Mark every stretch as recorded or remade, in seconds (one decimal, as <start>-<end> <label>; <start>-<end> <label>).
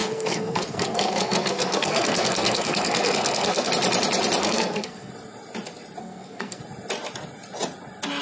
0.0-3.7 remade; 3.7-4.4 recorded; 4.4-5.1 remade; 5.1-6.0 recorded; 6.0-6.6 remade; 6.6-8.2 recorded